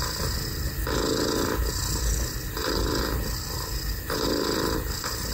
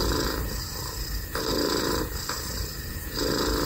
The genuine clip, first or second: first